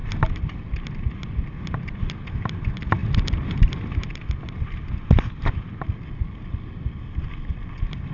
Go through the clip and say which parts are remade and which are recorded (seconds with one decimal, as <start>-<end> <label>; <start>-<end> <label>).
0.0-8.1 recorded